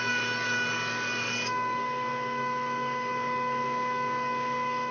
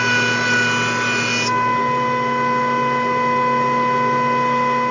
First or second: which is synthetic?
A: first